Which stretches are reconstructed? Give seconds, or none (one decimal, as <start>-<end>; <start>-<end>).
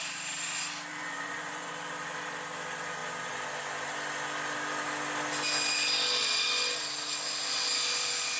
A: 0.9-1.7